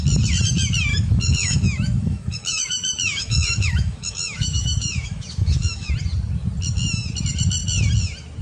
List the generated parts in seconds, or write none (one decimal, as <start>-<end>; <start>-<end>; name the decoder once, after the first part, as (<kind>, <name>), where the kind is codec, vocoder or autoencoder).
0.9-5.9 (autoencoder, DAC-VAE)